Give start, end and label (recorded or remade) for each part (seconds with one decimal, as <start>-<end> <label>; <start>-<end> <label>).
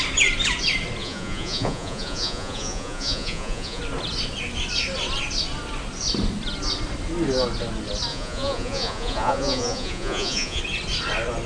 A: 0.0-1.0 recorded; 1.0-3.8 remade; 3.8-8.1 recorded; 8.1-10.6 remade; 10.6-11.5 recorded